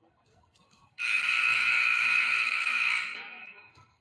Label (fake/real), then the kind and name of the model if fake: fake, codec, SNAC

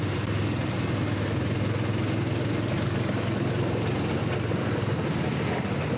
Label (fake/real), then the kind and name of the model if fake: real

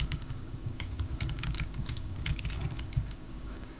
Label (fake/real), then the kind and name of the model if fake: fake, codec, DAC